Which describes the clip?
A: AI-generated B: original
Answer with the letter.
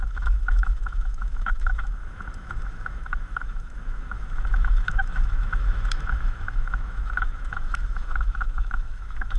A